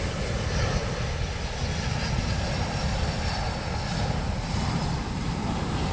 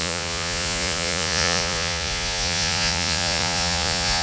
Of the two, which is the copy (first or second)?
second